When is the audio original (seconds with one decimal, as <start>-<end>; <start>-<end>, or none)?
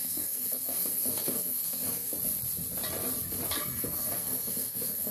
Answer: 2.1-3.5